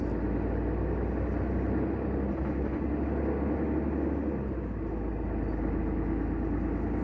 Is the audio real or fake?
real